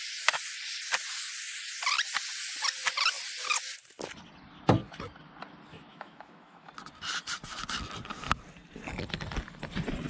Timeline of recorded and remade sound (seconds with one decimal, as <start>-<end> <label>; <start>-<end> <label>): 0.0-5.7 recorded; 5.7-6.7 remade; 6.7-10.1 recorded

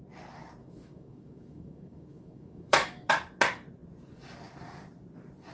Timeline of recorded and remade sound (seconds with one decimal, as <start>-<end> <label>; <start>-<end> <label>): 0.0-0.6 recorded; 0.6-3.1 remade; 3.1-5.5 recorded

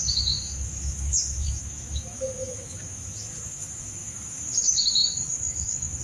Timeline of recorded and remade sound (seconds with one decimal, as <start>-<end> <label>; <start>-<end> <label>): 0.0-6.0 remade

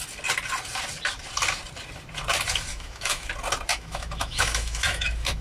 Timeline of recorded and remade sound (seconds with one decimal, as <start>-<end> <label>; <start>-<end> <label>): 0.0-2.7 recorded; 2.7-3.3 remade; 3.3-3.7 recorded; 3.7-5.4 remade